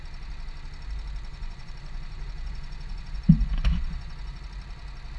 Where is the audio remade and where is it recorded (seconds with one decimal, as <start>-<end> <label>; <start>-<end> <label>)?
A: 0.0-1.3 recorded; 1.3-4.4 remade; 4.4-5.2 recorded